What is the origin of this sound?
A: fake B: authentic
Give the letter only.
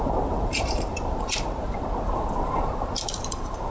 A